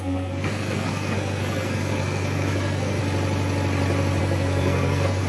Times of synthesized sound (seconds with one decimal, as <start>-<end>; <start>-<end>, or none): 0.0-3.0; 4.2-5.3